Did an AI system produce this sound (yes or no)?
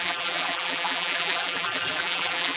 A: yes